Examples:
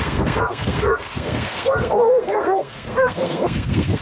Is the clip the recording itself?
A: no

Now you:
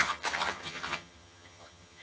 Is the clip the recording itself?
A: no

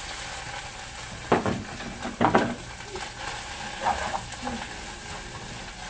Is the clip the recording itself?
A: yes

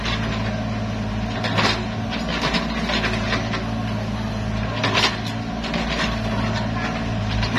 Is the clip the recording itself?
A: yes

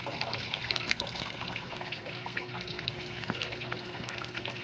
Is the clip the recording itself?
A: no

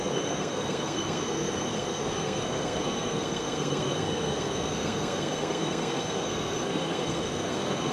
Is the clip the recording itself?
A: no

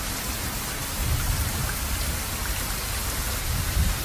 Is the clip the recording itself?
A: yes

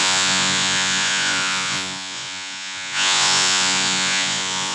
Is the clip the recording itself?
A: no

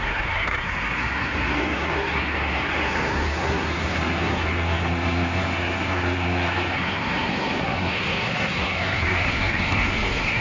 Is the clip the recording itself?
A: no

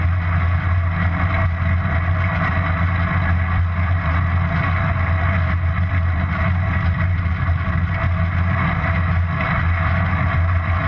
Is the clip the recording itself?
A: yes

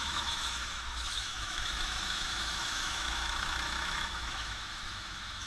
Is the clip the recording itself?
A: no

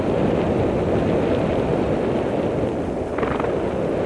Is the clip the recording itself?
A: yes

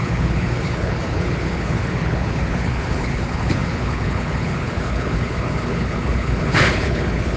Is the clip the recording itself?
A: no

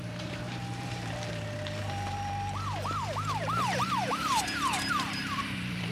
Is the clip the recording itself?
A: no